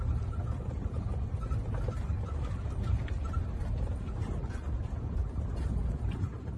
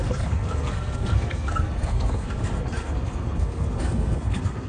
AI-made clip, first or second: second